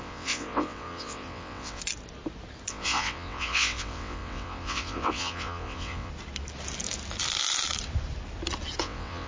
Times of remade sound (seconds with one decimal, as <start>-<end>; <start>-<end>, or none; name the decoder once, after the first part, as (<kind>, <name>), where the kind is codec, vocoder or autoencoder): 0.0-1.8 (vocoder, WaveNeXt); 2.7-6.1; 8.8-9.3